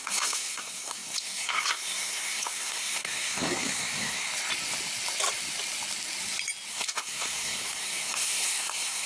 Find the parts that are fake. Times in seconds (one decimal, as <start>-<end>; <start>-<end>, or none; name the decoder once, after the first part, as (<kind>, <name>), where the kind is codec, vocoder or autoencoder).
0.0-4.3 (codec, SNAC); 6.7-9.1